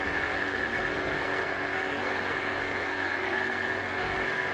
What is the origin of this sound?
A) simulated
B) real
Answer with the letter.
A